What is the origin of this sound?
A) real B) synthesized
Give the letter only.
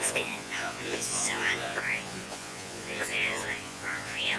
B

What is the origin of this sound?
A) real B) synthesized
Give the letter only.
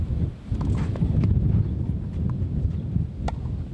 A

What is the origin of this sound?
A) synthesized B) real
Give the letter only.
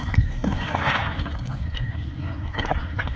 A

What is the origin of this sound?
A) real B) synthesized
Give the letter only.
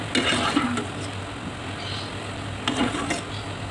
A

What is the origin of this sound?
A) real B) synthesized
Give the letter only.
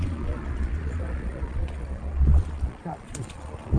B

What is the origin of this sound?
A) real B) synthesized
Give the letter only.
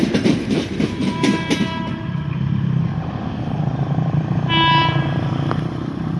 B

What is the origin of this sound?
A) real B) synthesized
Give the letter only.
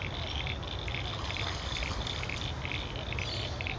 A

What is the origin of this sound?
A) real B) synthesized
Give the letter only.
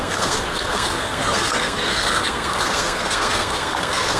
B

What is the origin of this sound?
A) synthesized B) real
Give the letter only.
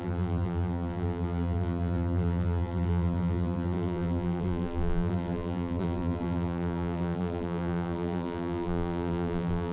A